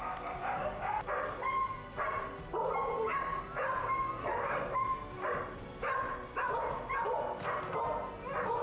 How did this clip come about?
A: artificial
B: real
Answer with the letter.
B